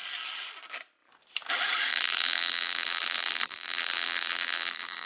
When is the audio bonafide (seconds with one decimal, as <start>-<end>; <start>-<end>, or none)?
0.0-1.9